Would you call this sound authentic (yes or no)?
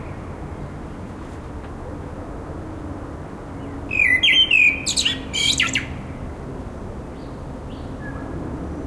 yes